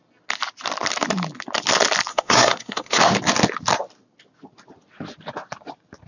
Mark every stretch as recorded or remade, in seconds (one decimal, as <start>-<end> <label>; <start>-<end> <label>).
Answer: 0.0-2.1 recorded; 2.1-3.0 remade; 3.0-6.1 recorded

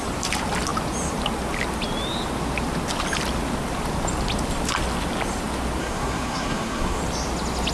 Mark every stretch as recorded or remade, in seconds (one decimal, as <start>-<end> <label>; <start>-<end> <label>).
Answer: 0.0-5.8 recorded; 5.8-7.0 remade; 7.0-7.7 recorded

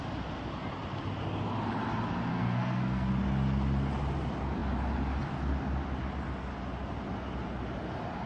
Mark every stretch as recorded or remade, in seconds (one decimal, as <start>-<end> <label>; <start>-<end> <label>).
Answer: 0.0-2.3 recorded; 2.3-3.1 remade; 3.1-8.3 recorded

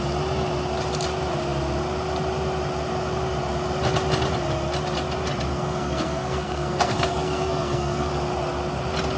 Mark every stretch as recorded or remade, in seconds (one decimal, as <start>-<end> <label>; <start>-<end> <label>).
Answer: 0.0-5.5 recorded; 5.5-8.1 remade; 8.1-9.2 recorded

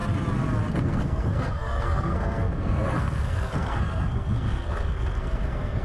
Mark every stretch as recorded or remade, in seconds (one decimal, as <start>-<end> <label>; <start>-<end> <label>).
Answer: 0.0-0.7 recorded; 0.7-5.8 remade

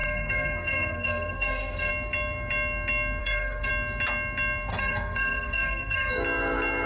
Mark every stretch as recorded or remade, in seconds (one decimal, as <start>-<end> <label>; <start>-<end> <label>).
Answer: 0.0-1.9 remade; 1.9-3.2 recorded; 3.2-3.7 remade; 3.7-4.7 recorded; 4.7-6.1 remade; 6.1-6.9 recorded

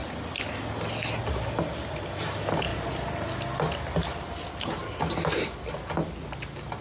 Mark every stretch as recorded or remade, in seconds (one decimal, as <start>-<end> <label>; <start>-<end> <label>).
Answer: 0.0-6.8 recorded

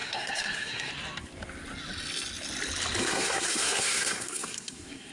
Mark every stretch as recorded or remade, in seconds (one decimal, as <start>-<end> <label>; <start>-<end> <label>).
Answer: 0.0-0.9 remade; 0.9-3.0 recorded; 3.0-5.1 remade